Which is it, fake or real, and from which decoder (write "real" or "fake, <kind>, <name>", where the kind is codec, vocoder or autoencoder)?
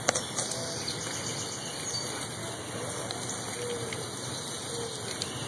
real